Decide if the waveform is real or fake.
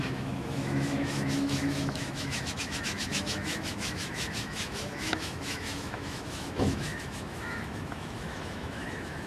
fake